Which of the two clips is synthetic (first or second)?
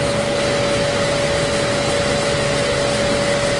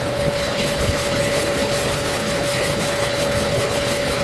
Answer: second